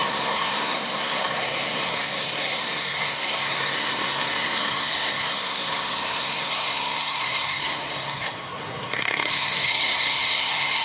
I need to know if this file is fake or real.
fake